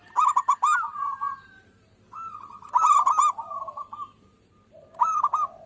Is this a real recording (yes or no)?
yes